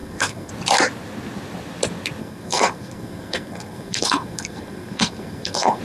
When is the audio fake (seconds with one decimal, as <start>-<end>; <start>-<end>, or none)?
0.0-0.5; 2.2-5.8